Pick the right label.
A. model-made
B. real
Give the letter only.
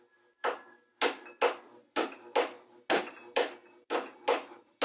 B